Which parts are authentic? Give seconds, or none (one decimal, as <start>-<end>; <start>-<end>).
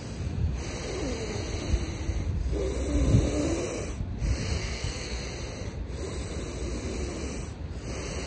0.0-4.6; 5.2-8.3